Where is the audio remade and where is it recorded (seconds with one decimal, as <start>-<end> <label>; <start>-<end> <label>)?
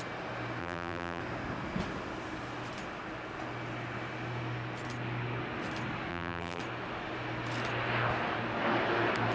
0.0-0.6 recorded; 0.6-1.2 remade; 1.2-6.1 recorded; 6.1-6.6 remade; 6.6-9.3 recorded